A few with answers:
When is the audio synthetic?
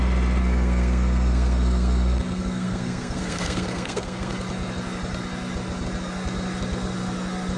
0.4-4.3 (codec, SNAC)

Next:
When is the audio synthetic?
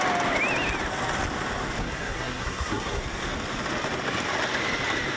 1.8-3.0 (codec, SNAC)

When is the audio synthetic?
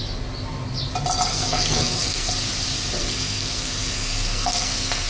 1.3-2.3 (codec, SNAC); 3.0-5.1